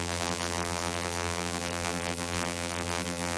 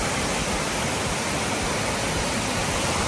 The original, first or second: second